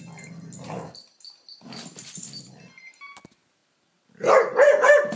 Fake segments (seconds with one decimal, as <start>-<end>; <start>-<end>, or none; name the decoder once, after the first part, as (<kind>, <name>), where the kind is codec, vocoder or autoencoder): 3.6-5.2 (vocoder, BigVGAN v2)

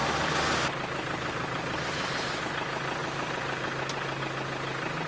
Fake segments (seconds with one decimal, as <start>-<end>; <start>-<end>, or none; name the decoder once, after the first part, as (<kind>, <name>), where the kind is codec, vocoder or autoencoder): 0.0-2.4 (vocoder, BigVGAN v2); 3.0-4.2